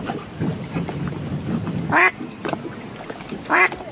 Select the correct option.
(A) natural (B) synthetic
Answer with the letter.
A